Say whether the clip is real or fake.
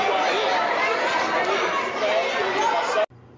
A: real